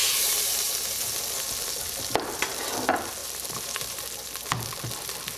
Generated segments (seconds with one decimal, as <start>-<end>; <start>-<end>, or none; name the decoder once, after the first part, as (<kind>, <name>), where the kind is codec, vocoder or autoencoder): 0.0-0.7 (vocoder, BigVGAN v2); 3.2-4.0